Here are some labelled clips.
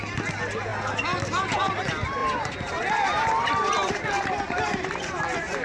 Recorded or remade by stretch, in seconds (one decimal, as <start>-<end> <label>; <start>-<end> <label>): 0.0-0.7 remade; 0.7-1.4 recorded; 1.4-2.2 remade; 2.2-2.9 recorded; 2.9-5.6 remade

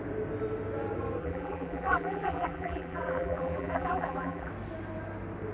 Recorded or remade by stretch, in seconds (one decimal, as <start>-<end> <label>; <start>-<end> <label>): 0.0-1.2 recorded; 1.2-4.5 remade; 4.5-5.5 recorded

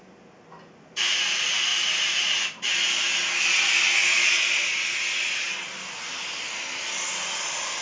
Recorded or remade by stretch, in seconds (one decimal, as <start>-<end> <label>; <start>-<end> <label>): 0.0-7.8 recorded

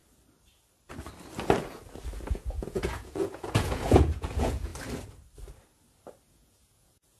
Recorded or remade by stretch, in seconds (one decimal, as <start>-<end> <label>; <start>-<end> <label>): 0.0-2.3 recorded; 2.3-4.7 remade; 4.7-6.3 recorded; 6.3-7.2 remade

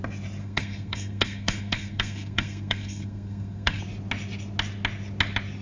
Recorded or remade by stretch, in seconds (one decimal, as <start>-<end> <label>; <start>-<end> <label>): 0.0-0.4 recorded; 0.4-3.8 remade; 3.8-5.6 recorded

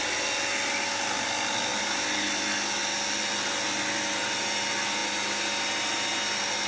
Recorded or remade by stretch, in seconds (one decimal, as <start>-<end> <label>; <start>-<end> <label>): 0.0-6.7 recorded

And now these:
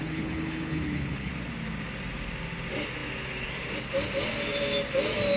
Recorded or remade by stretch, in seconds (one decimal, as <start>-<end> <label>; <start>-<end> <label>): 0.0-1.3 remade; 1.3-5.4 recorded

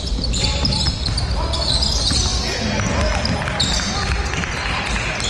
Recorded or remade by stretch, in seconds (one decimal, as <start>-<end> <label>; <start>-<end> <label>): 0.0-2.3 recorded; 2.3-4.8 remade; 4.8-5.3 recorded